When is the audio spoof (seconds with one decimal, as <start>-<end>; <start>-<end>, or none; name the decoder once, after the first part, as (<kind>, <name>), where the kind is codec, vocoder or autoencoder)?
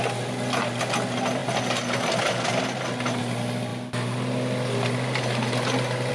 none